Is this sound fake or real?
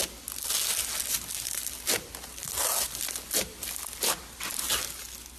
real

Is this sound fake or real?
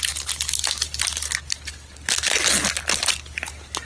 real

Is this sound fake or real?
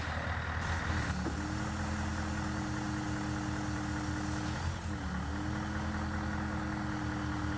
real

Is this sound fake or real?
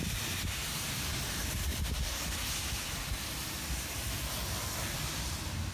fake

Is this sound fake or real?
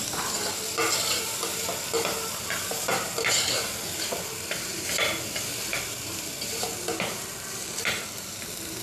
fake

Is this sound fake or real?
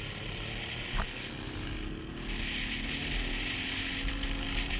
real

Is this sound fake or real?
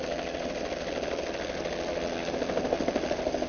real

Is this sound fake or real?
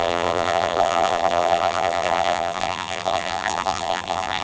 fake